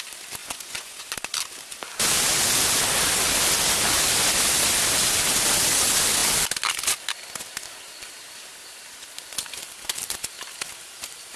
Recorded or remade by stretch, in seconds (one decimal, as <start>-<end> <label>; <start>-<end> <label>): 0.0-0.4 recorded; 0.4-1.1 remade; 1.1-11.4 recorded